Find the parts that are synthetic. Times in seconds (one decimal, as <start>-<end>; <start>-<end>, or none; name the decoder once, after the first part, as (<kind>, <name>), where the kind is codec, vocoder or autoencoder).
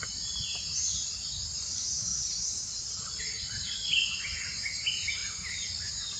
2.1-3.2 (vocoder, Vocos)